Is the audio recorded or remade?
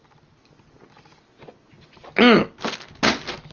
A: recorded